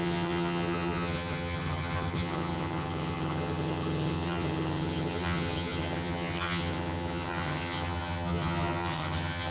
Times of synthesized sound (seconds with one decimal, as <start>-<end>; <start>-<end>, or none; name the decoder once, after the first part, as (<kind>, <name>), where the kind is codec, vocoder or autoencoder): 0.0-9.5 (vocoder, HiFi-GAN)